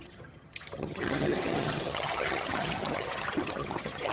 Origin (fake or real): fake